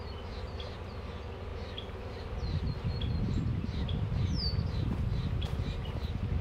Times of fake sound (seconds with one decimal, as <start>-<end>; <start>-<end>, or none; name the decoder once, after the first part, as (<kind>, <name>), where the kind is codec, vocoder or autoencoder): 3.5-5.9 (vocoder, BigVGAN v2)